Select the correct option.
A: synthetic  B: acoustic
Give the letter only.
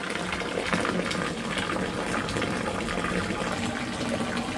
B